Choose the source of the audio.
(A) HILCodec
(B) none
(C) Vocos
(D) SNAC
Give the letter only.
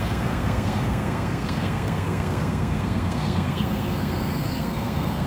D